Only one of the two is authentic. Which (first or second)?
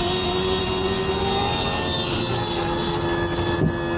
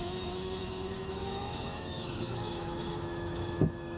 first